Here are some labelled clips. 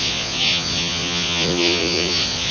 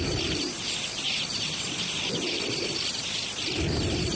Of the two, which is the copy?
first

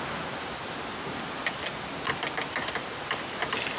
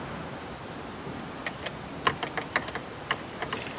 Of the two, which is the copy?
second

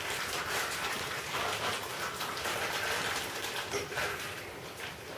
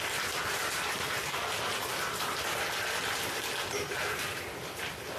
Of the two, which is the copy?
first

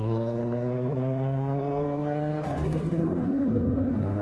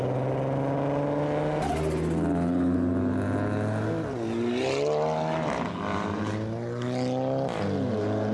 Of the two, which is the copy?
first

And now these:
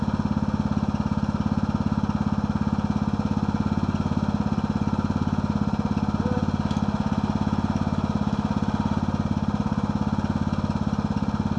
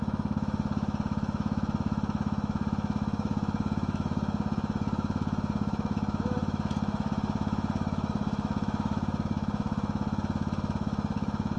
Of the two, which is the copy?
second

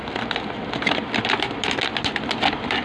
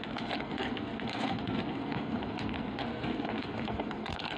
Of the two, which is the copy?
second